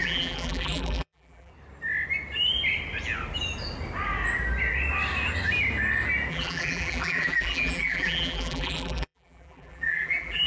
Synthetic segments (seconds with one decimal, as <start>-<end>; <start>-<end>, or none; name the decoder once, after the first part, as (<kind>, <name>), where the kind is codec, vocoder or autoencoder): 0.0-1.5 (vocoder, BigVGAN v2); 6.3-10.5